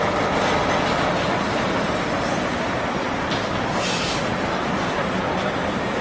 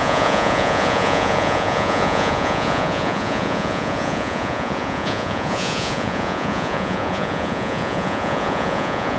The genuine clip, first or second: first